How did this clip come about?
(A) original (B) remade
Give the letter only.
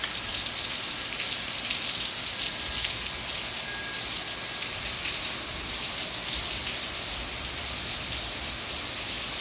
A